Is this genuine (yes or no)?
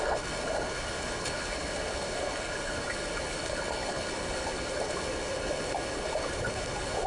no